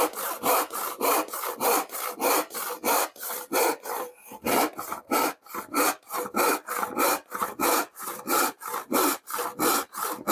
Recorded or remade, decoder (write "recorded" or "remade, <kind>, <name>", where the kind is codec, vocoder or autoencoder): recorded